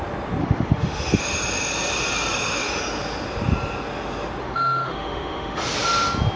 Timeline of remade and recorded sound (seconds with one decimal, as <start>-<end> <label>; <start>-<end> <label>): 0.0-0.4 recorded; 0.4-1.2 remade; 1.2-2.3 recorded; 2.3-2.8 remade; 2.8-4.4 recorded; 4.4-5.6 remade; 5.6-6.4 recorded

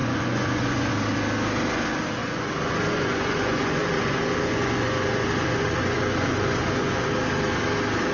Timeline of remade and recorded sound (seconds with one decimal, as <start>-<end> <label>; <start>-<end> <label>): 0.0-0.9 remade; 0.9-2.2 recorded; 2.2-7.1 remade; 7.1-8.1 recorded

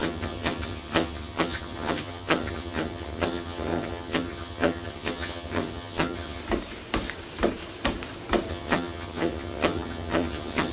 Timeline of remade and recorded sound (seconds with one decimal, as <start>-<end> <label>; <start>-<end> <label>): 0.0-6.4 remade; 6.4-8.5 recorded; 8.5-10.7 remade

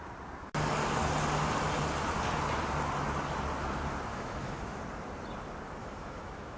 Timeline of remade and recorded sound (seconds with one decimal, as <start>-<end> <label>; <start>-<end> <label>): 0.0-4.1 recorded; 4.1-4.8 remade; 4.8-5.8 recorded; 5.8-6.6 remade